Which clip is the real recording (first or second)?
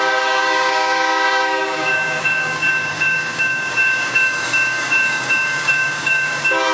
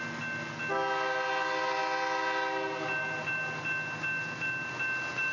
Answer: second